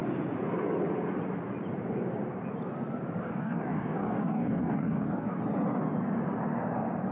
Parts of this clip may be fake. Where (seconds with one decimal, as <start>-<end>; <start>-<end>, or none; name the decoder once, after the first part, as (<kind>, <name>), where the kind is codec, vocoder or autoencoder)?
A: 3.2-5.4 (codec, DAC)